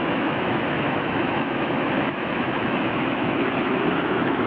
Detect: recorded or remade remade